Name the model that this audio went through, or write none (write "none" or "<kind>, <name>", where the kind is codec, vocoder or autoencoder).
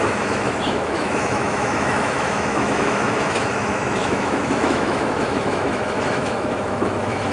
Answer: autoencoder, DAC-VAE